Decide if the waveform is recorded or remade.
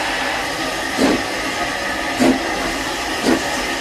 recorded